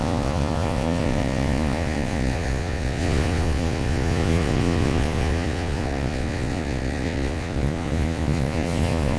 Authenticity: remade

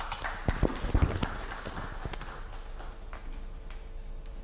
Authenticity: recorded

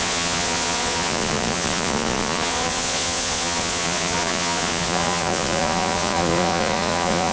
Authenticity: remade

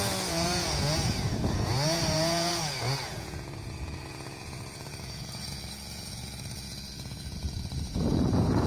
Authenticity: remade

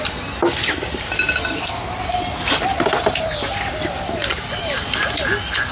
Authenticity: recorded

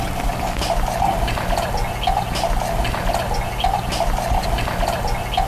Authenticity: recorded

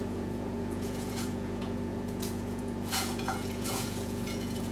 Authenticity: remade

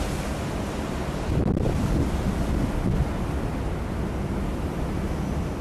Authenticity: recorded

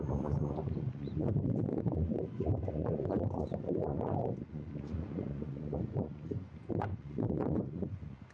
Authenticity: remade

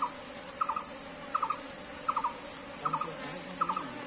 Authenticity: recorded